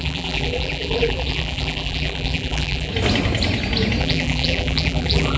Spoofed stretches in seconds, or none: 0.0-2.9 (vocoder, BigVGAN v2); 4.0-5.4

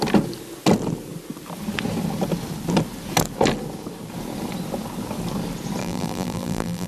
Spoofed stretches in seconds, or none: 5.8-6.9 (vocoder, BigVGAN v2)

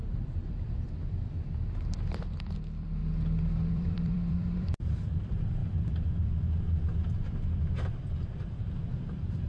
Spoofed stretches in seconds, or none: 0.0-3.0 (vocoder, BigVGAN v2); 3.7-5.6